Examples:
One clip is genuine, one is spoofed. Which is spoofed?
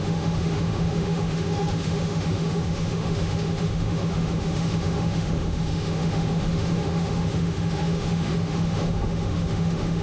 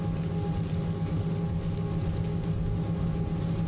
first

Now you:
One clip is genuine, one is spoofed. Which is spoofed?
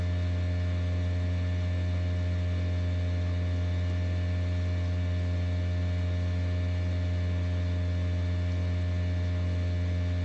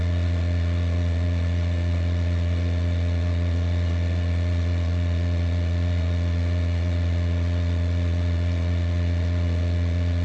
second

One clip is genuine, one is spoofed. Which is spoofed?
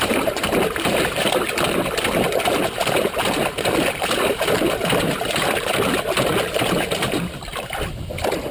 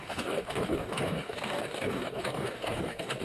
second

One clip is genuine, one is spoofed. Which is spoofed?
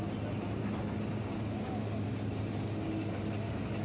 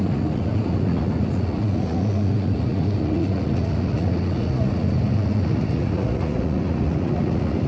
second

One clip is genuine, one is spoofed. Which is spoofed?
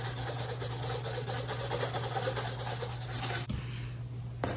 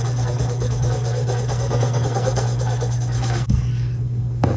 second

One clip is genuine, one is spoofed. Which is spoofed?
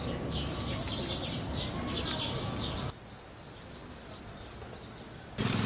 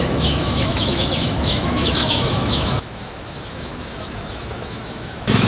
second